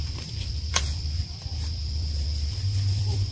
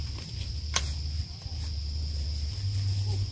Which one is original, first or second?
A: second